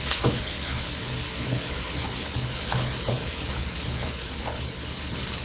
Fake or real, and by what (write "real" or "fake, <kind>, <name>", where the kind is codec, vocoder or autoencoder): fake, codec, HILCodec